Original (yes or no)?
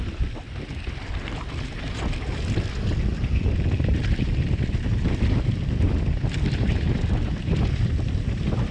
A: no